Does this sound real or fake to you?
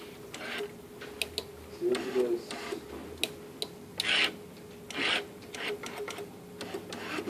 real